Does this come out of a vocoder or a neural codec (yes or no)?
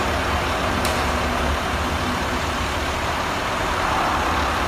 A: yes